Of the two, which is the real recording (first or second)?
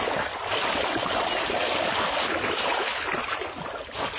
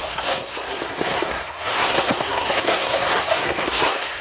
first